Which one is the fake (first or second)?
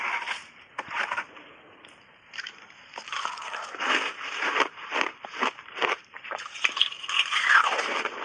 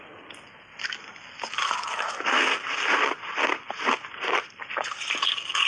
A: first